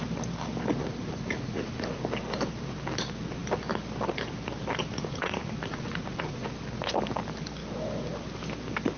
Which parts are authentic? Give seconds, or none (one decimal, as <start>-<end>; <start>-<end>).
0.0-0.8; 2.0-4.9; 6.5-9.0